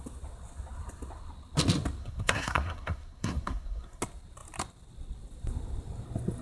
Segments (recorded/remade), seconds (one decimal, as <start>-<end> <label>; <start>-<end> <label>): 0.0-2.0 recorded; 2.0-4.0 remade; 4.0-6.4 recorded